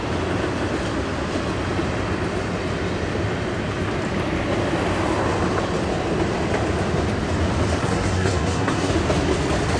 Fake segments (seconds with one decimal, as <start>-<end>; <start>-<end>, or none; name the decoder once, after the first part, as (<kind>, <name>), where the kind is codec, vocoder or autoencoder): 7.8-8.9 (codec, SNAC)